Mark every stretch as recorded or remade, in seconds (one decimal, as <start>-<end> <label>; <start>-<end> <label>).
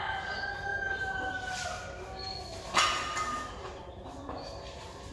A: 0.0-5.1 recorded